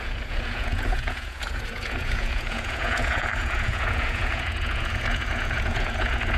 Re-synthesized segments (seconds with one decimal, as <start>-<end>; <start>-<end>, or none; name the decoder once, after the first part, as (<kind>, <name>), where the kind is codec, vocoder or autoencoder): 0.0-6.4 (vocoder, Vocos)